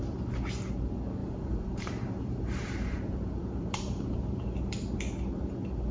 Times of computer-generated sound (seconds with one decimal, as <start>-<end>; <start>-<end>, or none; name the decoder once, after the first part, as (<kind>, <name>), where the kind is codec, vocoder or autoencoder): 1.2-4.7 (vocoder, BigVGAN v2)